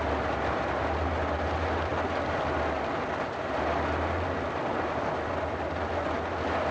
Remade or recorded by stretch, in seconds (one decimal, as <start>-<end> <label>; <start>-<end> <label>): 0.0-6.7 recorded